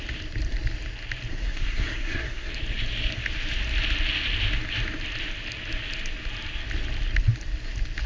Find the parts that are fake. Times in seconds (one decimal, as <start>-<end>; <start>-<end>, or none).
1.3-2.5